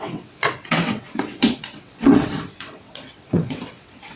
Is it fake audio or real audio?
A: fake